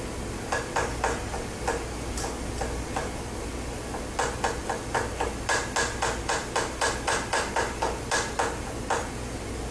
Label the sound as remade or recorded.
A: recorded